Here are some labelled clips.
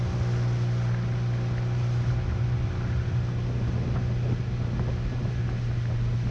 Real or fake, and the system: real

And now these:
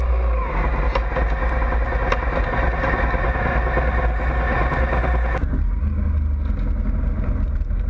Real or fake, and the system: real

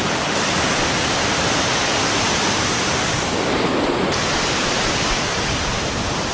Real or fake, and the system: real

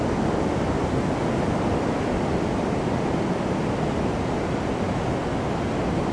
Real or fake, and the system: real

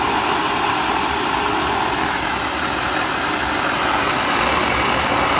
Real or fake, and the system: real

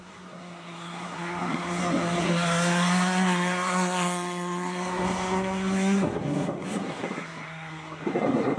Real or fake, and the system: fake, codec, SNAC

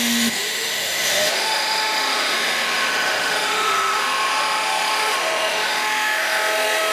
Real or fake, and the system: fake, autoencoder, DAC-VAE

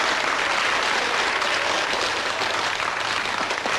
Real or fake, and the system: real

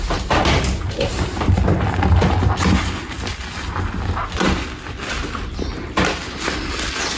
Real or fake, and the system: real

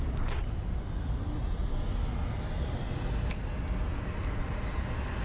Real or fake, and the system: real